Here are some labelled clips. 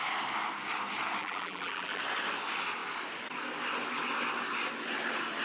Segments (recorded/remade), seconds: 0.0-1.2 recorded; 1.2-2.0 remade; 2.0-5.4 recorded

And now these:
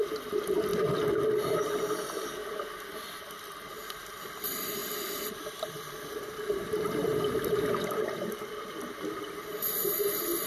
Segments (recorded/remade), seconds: 0.0-0.7 remade; 0.7-1.3 recorded; 1.3-4.8 remade; 4.8-5.6 recorded; 5.6-10.5 remade

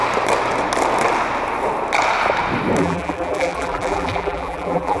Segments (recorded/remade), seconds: 0.0-2.8 recorded; 2.8-5.0 remade

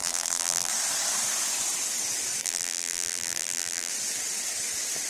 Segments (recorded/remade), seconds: 0.0-0.7 remade; 0.7-2.4 recorded; 2.4-3.9 remade; 3.9-5.1 recorded